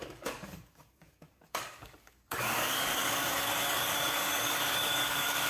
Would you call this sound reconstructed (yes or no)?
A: yes